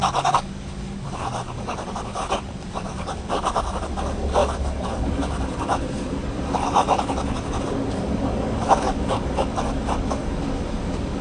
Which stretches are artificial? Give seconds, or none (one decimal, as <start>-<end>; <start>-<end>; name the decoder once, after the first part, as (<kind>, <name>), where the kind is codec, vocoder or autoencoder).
0.0-11.2 (codec, DAC)